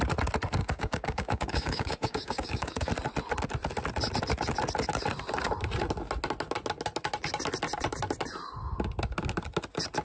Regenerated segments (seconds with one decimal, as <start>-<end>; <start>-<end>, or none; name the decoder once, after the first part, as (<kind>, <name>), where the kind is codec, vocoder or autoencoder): 0.6-2.9 (codec, DAC)